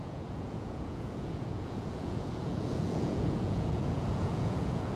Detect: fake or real fake